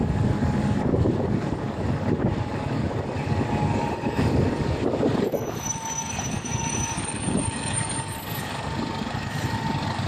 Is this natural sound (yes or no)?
no